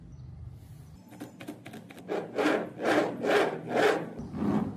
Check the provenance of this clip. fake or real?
real